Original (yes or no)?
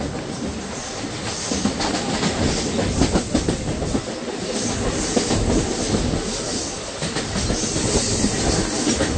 yes